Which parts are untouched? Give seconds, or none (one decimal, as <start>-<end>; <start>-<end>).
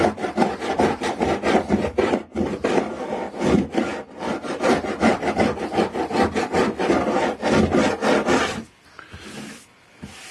none